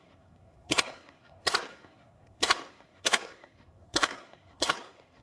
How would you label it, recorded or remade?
remade